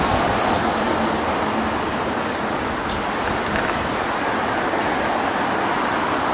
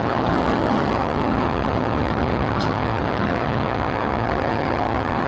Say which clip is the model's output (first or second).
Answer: second